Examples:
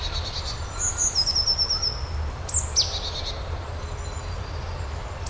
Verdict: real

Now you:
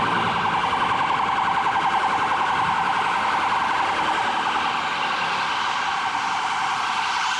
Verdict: real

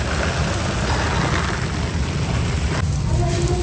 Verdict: real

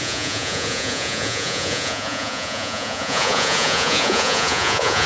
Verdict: fake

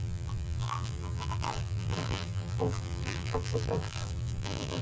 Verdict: fake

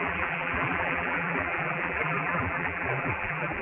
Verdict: fake